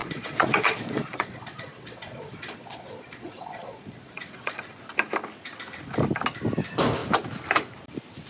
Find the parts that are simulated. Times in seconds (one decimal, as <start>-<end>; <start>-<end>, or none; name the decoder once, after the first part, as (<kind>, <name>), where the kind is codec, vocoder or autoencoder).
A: 0.0-4.8 (vocoder, Vocos)